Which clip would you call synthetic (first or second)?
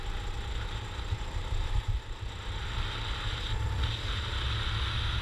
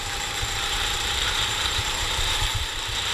second